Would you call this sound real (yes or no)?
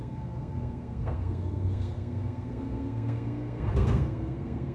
no